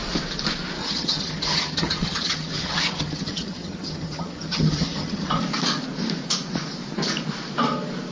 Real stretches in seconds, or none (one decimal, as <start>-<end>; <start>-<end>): 0.0-0.8; 5.4-8.1